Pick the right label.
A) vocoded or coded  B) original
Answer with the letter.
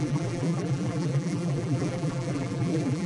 A